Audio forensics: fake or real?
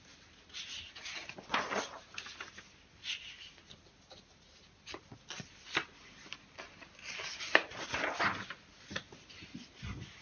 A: real